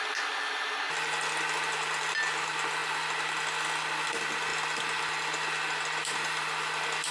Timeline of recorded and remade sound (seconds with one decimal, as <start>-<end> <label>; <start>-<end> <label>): 0.0-7.1 recorded